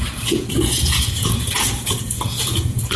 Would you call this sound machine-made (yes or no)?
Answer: yes